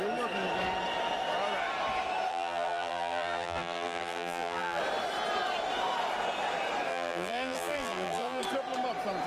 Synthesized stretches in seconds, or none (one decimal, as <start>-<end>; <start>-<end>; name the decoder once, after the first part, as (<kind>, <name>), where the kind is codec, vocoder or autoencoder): 2.3-4.8 (vocoder, BigVGAN v2); 6.9-8.4